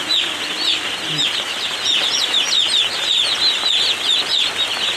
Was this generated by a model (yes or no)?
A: no